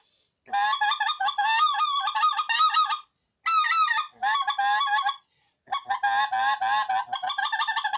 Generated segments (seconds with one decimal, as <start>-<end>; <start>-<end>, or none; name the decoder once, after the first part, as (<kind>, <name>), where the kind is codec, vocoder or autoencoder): none